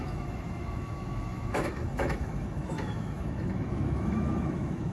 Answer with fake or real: fake